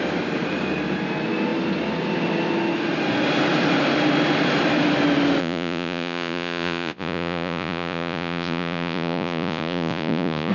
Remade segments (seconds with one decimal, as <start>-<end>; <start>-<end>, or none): 5.4-10.5